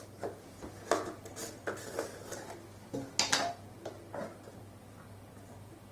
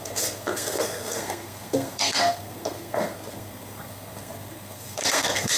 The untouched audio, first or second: first